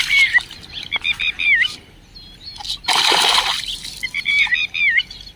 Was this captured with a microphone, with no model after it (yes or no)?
yes